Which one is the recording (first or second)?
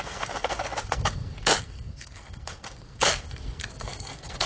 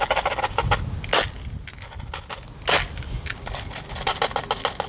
second